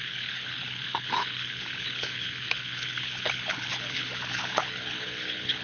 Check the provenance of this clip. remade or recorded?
remade